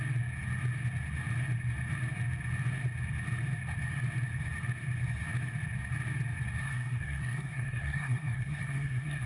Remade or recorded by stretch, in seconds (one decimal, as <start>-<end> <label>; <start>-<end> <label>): 0.0-6.6 recorded; 6.6-9.3 remade